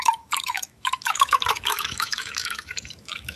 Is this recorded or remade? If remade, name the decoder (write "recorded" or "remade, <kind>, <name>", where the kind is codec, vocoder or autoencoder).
remade, autoencoder, DAC-VAE